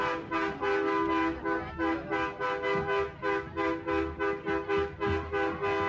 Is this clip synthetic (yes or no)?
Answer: no